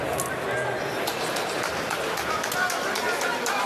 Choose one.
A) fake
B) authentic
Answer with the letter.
B